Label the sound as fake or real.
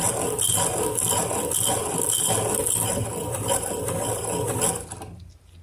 real